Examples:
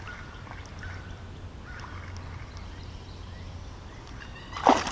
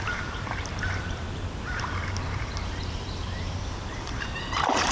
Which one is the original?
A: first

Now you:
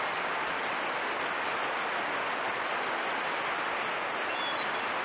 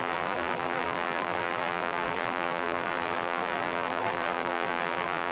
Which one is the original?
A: first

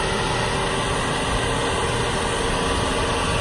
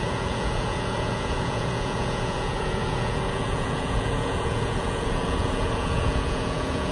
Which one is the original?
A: first